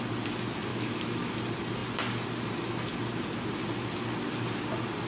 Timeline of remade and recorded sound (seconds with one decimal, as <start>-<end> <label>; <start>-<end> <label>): 0.0-0.7 recorded; 0.7-1.3 remade; 1.3-5.1 recorded

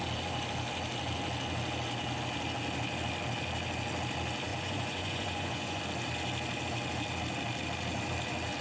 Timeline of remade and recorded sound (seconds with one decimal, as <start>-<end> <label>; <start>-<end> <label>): 0.0-4.5 recorded; 4.5-5.8 remade; 5.8-8.6 recorded

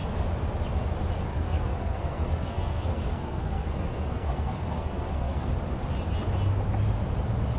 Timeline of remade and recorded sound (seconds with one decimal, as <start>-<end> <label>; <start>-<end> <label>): 0.0-1.3 recorded; 1.3-5.5 remade; 5.5-7.6 recorded

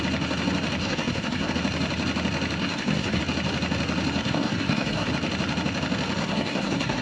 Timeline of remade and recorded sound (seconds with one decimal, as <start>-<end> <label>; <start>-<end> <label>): 0.0-0.8 recorded; 0.8-1.5 remade; 1.5-2.6 recorded; 2.6-3.2 remade; 3.2-4.2 recorded; 4.2-5.1 remade; 5.1-6.2 recorded; 6.2-7.0 remade

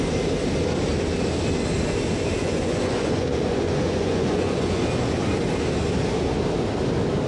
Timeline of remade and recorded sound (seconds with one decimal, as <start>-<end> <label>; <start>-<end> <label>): 0.0-2.4 recorded; 2.4-4.8 remade; 4.8-7.3 recorded

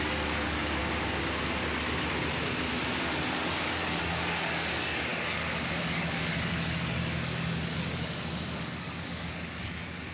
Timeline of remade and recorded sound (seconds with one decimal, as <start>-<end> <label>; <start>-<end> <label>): 0.0-0.8 remade; 0.8-3.3 recorded; 3.3-10.1 remade

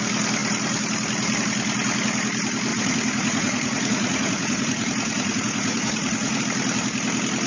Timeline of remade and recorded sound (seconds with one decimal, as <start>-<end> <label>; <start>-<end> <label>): 0.0-2.7 recorded; 2.7-6.4 remade; 6.4-7.5 recorded